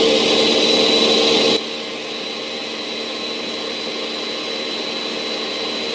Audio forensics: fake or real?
real